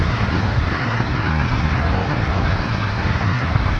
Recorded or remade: remade